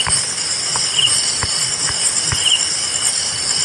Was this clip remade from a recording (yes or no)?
no